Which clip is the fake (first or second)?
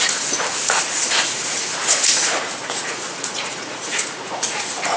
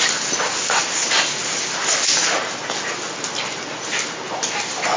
first